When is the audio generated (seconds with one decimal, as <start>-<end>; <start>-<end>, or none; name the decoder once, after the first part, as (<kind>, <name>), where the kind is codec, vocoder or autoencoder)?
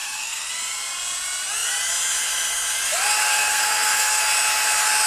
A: 0.0-0.6 (codec, SNAC); 3.2-4.2